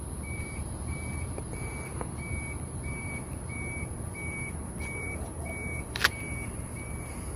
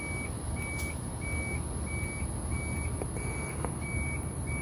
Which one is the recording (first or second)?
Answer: second